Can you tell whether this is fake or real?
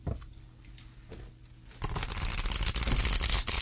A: real